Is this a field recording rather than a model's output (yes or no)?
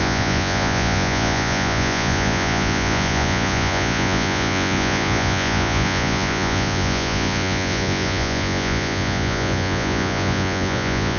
no